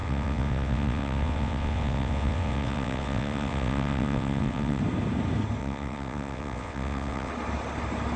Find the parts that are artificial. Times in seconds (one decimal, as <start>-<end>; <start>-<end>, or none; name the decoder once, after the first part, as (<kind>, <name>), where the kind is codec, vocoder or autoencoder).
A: 0.0-4.8 (vocoder, WaveNeXt); 5.6-7.3

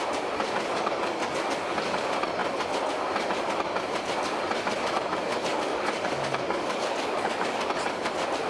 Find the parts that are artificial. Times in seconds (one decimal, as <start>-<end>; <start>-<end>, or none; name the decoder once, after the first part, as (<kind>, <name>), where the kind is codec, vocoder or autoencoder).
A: 0.7-2.0 (codec, DAC); 5.5-7.7

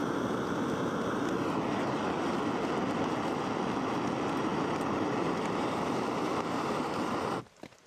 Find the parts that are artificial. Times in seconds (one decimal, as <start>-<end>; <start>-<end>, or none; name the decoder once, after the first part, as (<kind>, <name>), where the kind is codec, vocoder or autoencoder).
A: 4.5-7.4 (vocoder, BigVGAN v2)

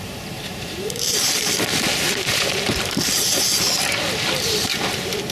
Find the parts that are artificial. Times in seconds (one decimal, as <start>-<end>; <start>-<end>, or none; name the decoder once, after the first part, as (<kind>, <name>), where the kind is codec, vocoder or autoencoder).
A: 0.0-4.7 (vocoder, BigVGAN v2)

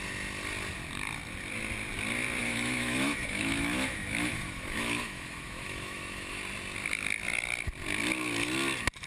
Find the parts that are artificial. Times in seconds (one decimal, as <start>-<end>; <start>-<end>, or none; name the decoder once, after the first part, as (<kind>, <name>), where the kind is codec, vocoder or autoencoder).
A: 2.4-6.4 (autoencoder, DAC-VAE)

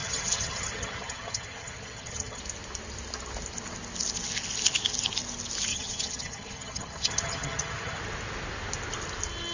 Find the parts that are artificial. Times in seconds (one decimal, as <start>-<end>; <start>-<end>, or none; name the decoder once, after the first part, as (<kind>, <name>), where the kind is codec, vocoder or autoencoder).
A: 0.0-2.4 (vocoder, HiFi-GAN); 5.7-8.0

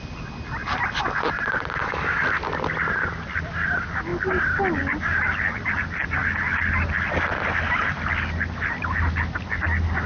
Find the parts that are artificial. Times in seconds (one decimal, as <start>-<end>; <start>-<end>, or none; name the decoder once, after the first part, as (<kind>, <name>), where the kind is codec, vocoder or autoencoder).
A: none